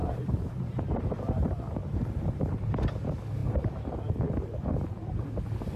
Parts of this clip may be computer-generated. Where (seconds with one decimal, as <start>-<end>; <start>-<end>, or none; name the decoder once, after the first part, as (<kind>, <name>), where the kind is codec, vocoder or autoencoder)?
0.0-2.8 (vocoder, BigVGAN v2); 3.4-4.0